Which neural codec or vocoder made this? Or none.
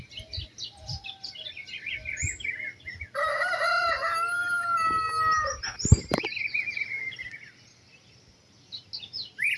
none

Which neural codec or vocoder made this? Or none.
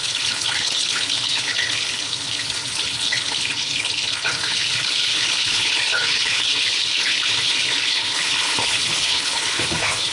codec, HILCodec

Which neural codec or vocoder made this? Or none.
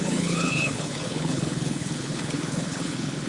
codec, HILCodec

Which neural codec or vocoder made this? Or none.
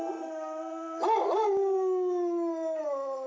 none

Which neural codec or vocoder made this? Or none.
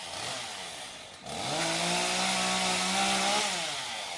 none